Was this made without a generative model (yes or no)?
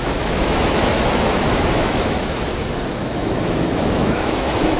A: no